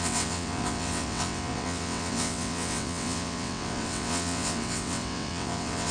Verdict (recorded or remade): remade